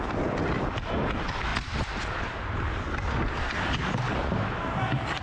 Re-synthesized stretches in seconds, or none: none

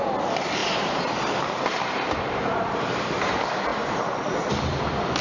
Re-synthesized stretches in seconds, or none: 0.6-3.2 (vocoder, BigVGAN v2); 3.7-4.5